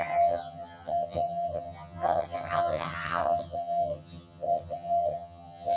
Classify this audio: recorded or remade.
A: remade